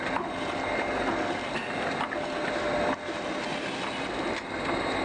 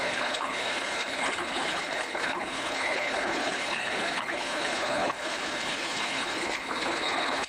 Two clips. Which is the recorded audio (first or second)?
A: first